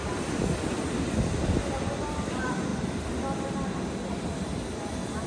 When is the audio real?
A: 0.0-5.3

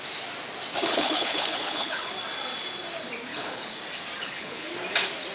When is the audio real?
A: 0.0-0.9; 2.1-3.3; 3.8-4.2; 4.7-5.3

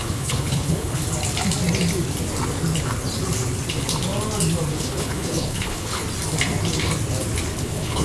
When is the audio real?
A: 1.0-4.8; 6.0-7.6

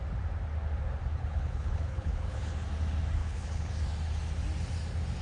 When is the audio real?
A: 0.0-1.1; 2.5-3.2; 3.7-5.2

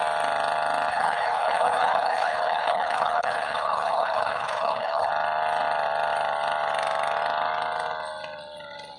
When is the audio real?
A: 0.0-0.9; 5.1-9.0